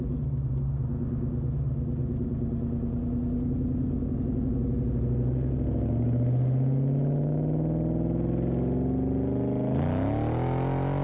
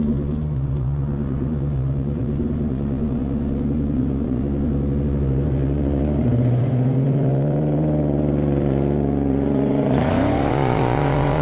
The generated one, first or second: second